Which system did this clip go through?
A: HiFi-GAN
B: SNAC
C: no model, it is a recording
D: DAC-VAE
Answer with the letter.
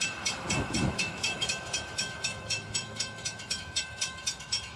D